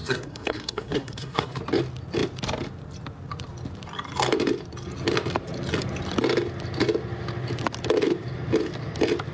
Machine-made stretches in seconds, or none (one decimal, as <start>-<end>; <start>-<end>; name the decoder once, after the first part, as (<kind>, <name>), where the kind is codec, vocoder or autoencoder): 0.0-1.6 (codec, SNAC)